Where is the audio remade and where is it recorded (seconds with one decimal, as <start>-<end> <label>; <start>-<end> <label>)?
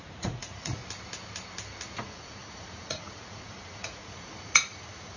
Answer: 0.0-0.8 remade; 0.8-2.0 recorded; 2.0-5.2 remade